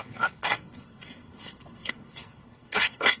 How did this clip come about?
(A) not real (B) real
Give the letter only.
A